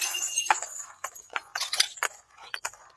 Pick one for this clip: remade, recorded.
remade